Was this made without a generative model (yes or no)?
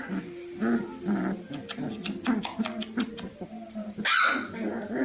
yes